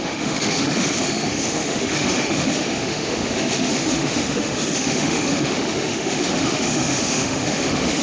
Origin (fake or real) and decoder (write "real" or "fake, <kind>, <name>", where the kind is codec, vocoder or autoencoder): fake, autoencoder, DAC-VAE